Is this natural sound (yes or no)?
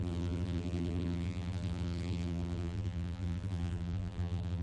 no